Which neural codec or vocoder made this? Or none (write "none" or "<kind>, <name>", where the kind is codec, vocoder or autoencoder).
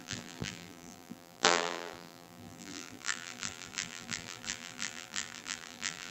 vocoder, BigVGAN v2